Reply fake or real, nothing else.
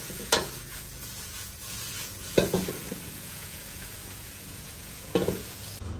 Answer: fake